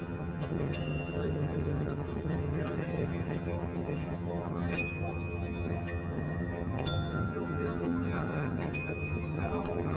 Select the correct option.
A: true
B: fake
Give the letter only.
B